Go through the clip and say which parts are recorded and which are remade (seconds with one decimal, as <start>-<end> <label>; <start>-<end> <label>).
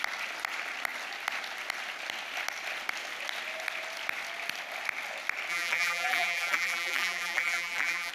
0.0-5.5 recorded; 5.5-8.1 remade